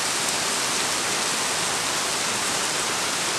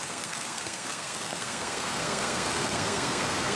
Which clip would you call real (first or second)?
first